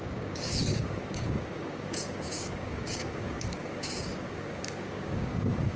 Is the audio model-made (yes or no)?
yes